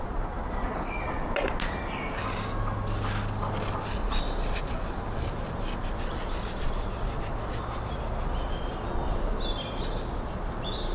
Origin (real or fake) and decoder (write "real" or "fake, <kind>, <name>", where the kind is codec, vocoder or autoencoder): real